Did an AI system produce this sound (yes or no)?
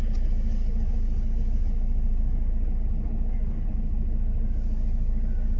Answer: no